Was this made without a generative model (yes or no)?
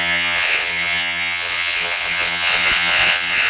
no